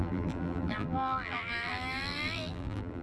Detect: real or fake fake